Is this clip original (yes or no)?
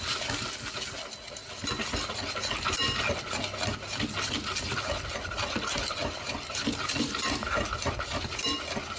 yes